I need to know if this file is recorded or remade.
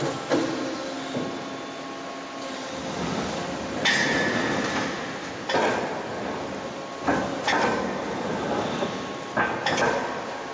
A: recorded